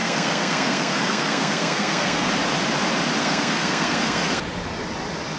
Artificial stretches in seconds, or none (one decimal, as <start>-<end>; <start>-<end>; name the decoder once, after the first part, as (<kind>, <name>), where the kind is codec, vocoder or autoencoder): 0.0-2.3 (codec, SNAC); 3.2-4.4